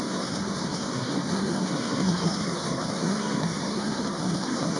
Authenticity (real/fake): fake